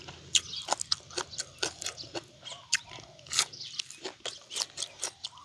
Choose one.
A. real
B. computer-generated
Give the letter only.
A